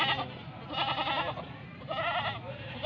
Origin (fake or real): real